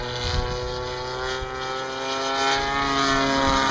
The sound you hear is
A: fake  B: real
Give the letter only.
B